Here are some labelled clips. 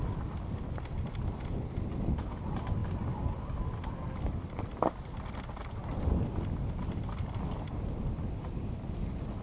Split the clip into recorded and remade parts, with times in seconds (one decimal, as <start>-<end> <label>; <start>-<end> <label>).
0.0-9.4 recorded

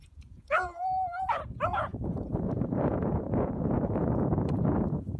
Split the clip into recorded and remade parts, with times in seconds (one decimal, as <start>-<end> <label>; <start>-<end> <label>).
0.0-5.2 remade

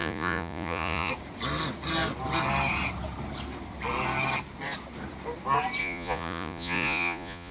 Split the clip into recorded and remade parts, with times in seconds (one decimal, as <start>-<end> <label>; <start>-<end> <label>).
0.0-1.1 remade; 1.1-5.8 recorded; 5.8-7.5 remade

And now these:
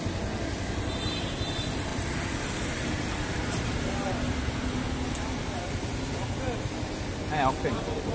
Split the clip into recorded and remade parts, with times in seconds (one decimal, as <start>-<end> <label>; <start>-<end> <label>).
0.0-8.1 recorded

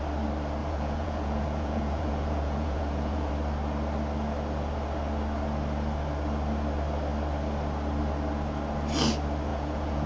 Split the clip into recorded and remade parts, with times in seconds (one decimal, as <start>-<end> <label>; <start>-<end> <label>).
0.0-0.6 recorded; 0.6-3.3 remade; 3.3-9.5 recorded; 9.5-10.1 remade

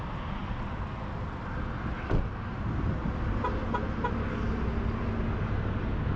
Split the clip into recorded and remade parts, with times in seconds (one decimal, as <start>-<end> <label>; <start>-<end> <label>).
0.0-6.2 recorded

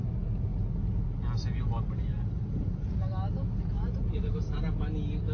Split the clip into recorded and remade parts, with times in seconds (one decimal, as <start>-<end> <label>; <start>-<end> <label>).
0.0-5.3 recorded

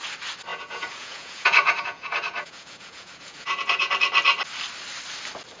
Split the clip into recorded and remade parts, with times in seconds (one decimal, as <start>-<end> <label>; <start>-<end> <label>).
0.0-0.5 recorded; 0.5-3.9 remade; 3.9-5.6 recorded